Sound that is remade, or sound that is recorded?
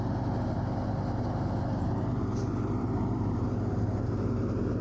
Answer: remade